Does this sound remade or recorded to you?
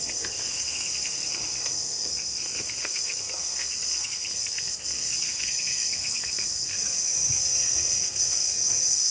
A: remade